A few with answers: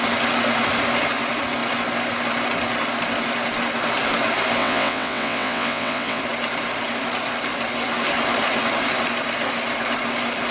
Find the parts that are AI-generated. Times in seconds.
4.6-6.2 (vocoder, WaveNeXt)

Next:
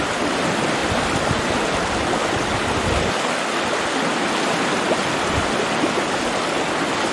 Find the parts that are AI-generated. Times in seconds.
none

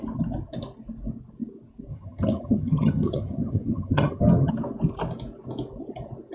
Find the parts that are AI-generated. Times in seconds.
1.9-4.5 (vocoder, HiFi-GAN)

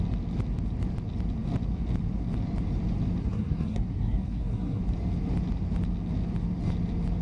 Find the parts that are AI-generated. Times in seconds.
3.2-4.8 (codec, SNAC)

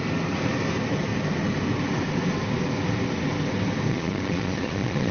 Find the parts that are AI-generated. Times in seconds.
3.9-5.1 (vocoder, Vocos)

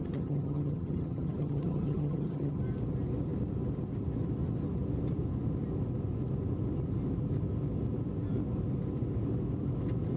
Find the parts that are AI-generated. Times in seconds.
0.0-2.6 (vocoder, HiFi-GAN)

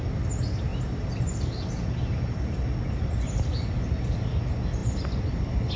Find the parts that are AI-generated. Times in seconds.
0.7-2.4 (vocoder, BigVGAN v2)